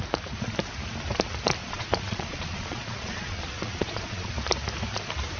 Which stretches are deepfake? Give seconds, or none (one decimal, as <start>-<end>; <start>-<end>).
1.6-4.3